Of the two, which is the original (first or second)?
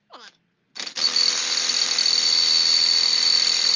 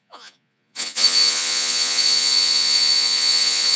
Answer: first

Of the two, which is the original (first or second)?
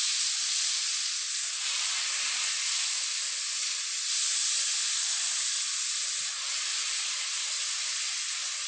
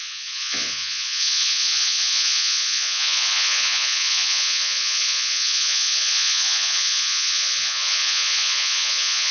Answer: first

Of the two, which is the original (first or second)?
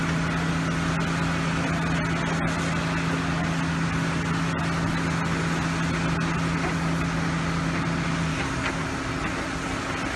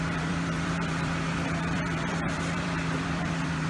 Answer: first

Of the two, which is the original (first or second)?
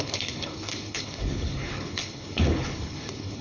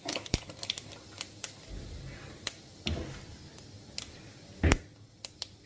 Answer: second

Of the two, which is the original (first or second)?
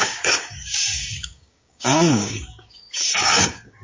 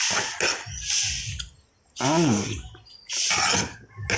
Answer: second